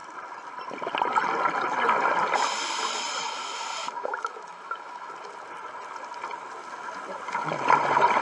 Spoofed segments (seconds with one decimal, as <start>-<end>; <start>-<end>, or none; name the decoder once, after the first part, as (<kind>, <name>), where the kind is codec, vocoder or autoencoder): 3.8-5.1 (autoencoder, DAC-VAE)